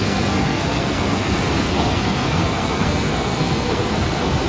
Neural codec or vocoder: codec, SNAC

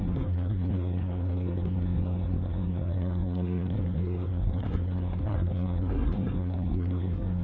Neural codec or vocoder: codec, SNAC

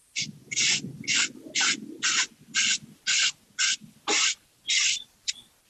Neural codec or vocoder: none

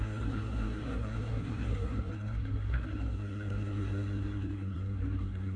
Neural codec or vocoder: codec, SNAC